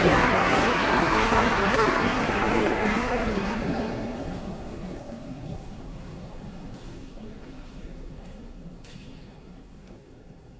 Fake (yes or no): yes